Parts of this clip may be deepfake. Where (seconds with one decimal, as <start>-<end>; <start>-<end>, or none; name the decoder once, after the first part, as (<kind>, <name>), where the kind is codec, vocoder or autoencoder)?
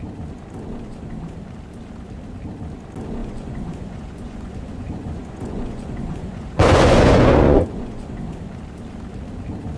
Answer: 3.2-8.3 (vocoder, Vocos)